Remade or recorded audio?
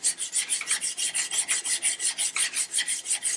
recorded